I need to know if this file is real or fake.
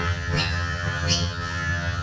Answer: fake